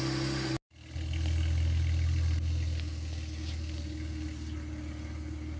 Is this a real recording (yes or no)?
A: yes